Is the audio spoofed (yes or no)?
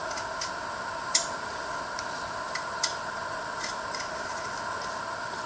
no